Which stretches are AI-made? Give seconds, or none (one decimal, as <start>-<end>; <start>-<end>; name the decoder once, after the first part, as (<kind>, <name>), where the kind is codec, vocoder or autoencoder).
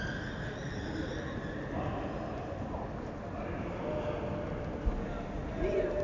none